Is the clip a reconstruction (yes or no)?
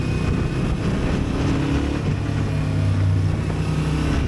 no